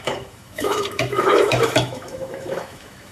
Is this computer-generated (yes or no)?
yes